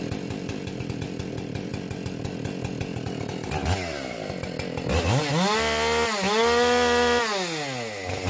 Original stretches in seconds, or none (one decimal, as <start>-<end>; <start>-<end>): 0.0-8.3